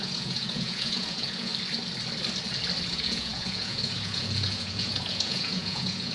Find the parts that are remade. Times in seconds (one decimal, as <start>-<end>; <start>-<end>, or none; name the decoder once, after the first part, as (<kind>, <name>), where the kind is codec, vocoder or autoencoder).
0.0-1.5 (vocoder, Vocos); 2.9-6.1